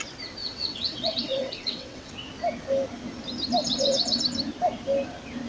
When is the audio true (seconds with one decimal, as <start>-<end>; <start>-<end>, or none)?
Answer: 0.0-0.4; 2.1-3.6; 4.2-5.5